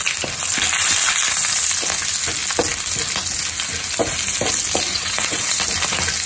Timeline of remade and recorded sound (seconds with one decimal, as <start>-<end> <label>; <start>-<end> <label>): 0.0-4.9 recorded; 4.9-5.6 remade; 5.6-6.3 recorded